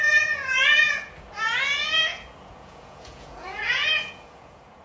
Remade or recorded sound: remade